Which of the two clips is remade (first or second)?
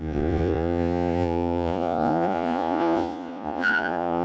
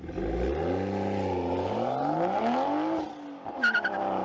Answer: first